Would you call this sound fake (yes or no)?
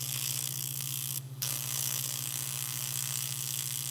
yes